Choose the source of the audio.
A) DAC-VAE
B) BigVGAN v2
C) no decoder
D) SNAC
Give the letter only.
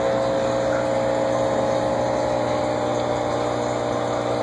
C